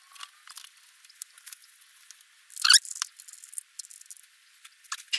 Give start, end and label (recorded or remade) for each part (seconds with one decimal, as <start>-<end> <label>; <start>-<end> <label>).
0.0-5.2 recorded